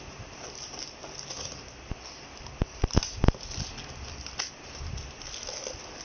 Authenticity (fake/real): real